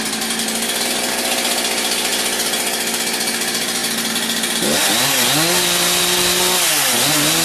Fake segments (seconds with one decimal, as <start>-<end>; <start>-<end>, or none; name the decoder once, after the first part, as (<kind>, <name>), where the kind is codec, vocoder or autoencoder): none